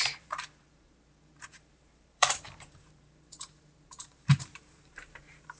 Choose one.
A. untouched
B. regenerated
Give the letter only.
B